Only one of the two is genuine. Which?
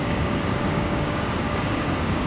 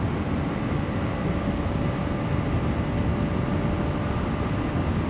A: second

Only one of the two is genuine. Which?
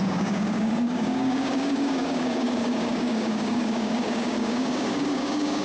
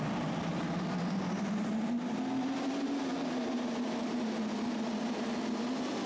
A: second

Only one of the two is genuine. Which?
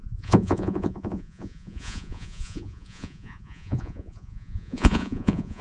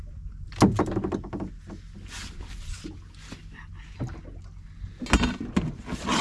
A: second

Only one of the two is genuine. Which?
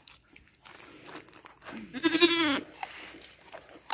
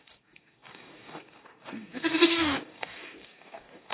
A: first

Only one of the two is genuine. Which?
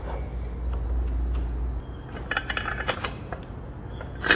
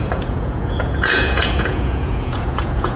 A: first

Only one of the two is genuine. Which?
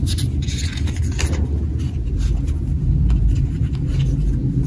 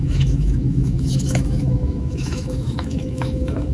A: first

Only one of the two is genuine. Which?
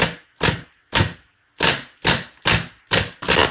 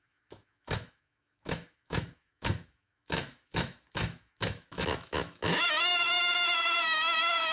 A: first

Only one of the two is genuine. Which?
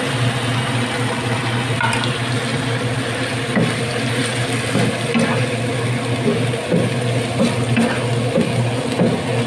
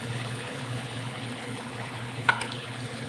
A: first